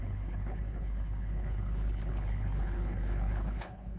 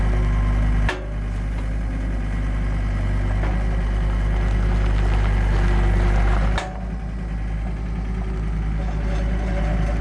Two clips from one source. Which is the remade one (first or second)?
first